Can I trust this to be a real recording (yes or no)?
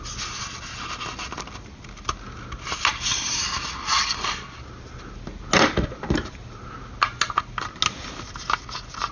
yes